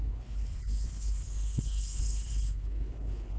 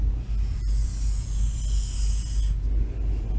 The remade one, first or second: first